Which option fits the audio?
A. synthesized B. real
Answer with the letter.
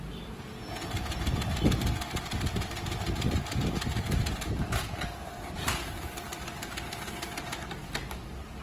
B